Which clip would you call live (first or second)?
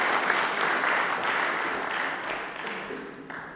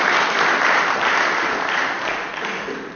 first